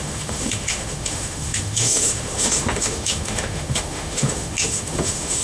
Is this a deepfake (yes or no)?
yes